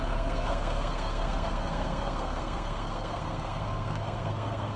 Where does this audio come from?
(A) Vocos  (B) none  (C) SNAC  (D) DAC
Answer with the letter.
C